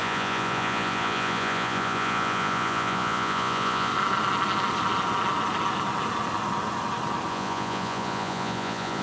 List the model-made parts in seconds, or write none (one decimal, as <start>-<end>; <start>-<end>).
0.0-3.9; 7.3-9.0